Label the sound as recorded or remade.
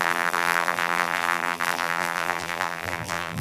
remade